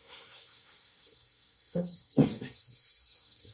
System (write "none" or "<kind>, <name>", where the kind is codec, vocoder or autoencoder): codec, SNAC